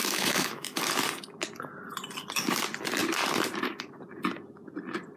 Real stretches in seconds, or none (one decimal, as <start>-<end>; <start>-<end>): 0.8-5.2